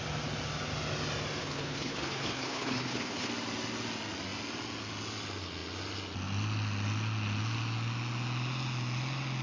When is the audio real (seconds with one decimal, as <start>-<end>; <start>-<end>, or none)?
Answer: 0.0-1.4; 3.3-9.4